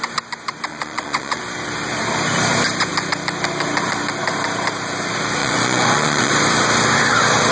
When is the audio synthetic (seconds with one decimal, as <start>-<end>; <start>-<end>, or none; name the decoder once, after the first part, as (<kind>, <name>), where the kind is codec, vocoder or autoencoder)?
0.7-1.4 (vocoder, Vocos); 5.4-6.3